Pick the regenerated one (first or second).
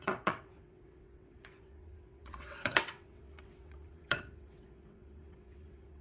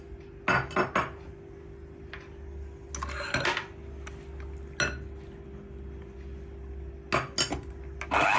first